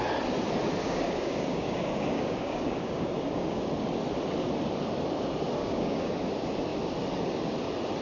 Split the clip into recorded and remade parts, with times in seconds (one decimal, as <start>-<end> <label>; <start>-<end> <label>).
0.0-0.8 recorded; 0.8-3.6 remade; 3.6-5.6 recorded; 5.6-6.1 remade; 6.1-8.0 recorded

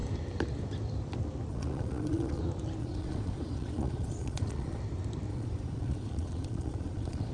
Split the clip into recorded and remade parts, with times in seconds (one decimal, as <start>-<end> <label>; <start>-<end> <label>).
0.0-1.5 recorded; 1.5-2.4 remade; 2.4-2.8 recorded; 2.8-4.8 remade; 4.8-5.3 recorded; 5.3-7.3 remade

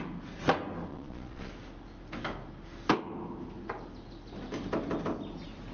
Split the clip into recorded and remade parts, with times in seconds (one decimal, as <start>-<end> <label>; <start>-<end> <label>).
0.0-0.9 recorded; 0.9-1.5 remade; 1.5-5.7 recorded

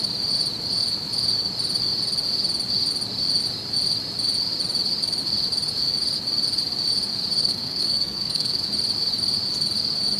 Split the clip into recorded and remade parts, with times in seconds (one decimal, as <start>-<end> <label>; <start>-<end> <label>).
0.0-7.4 recorded; 7.4-8.6 remade; 8.6-10.2 recorded

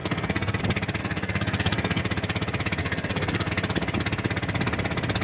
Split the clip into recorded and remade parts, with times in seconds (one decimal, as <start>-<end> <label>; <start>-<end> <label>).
0.0-0.6 remade; 0.6-1.0 recorded; 1.0-2.0 remade; 2.0-2.8 recorded; 2.8-3.5 remade; 3.5-5.2 recorded

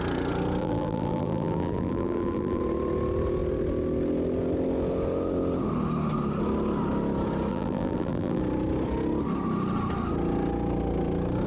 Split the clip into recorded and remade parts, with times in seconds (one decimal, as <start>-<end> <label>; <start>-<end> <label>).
0.0-0.6 recorded; 0.6-2.6 remade; 2.6-7.5 recorded; 7.5-8.4 remade; 8.4-11.5 recorded

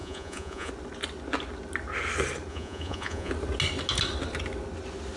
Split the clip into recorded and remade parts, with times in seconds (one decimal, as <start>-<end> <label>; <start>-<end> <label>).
0.0-0.7 remade; 0.7-2.5 recorded; 2.5-3.3 remade; 3.3-5.2 recorded

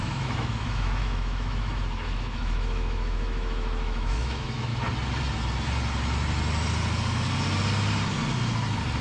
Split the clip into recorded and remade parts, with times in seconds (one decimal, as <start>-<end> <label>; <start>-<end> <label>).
0.0-4.7 remade; 4.7-9.0 recorded